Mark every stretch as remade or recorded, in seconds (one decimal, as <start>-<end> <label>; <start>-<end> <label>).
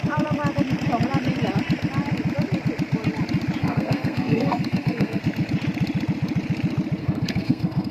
0.0-3.6 recorded; 3.6-5.2 remade; 5.2-7.0 recorded; 7.0-7.9 remade